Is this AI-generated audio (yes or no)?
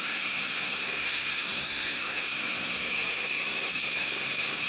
yes